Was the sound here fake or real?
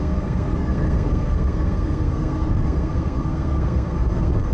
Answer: fake